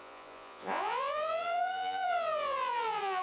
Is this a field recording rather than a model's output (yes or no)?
no